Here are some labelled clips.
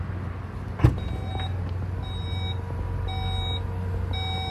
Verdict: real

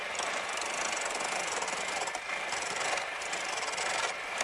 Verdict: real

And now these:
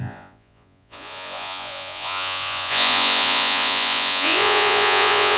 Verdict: fake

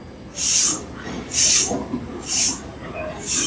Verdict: real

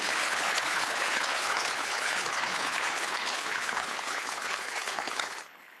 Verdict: fake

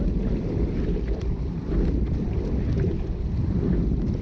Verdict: fake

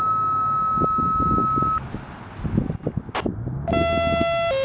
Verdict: real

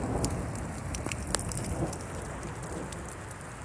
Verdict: real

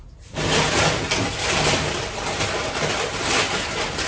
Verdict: real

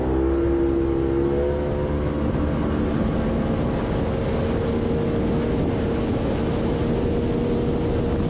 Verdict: real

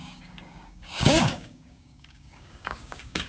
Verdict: fake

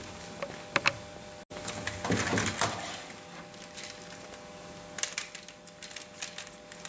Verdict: real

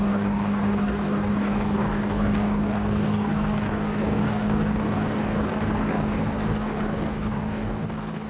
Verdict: fake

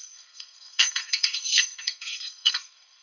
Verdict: fake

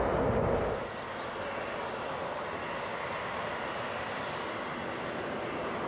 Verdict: real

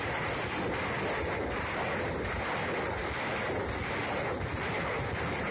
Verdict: real